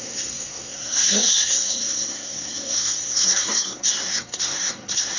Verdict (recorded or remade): remade